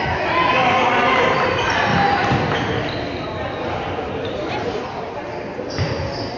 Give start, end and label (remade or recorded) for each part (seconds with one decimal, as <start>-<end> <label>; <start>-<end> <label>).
0.0-6.4 recorded